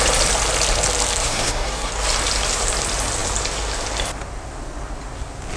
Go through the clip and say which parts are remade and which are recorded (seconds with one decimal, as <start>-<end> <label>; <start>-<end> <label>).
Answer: 0.0-1.2 recorded; 1.2-1.9 remade; 1.9-5.6 recorded